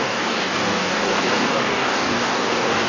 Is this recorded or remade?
remade